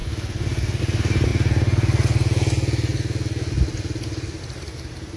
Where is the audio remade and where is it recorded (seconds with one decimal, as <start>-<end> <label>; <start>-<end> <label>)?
0.0-0.8 recorded; 0.8-1.3 remade; 1.3-4.4 recorded; 4.4-5.2 remade